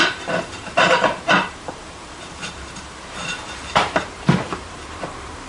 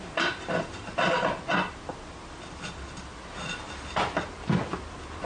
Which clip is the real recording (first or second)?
second